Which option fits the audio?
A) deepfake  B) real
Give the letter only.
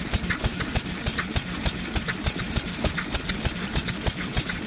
B